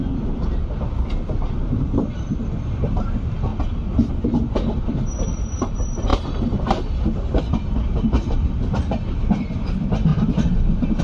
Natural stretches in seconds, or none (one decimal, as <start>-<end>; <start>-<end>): 0.0-0.7; 3.5-4.1; 6.1-6.6; 10.1-11.0